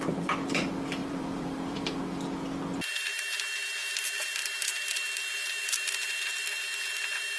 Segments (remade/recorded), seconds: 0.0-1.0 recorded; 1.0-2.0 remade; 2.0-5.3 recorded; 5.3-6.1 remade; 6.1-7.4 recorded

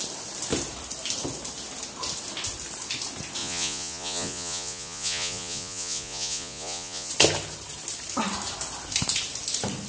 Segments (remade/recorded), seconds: 0.0-3.4 recorded; 3.4-7.1 remade; 7.1-9.9 recorded

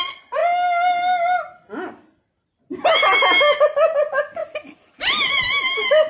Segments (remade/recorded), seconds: 0.0-6.1 recorded

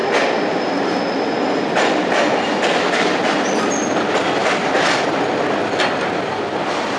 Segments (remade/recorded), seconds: 0.0-7.0 recorded